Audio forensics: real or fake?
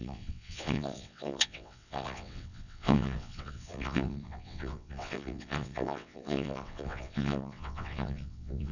fake